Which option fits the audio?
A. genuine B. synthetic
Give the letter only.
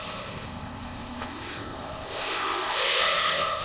B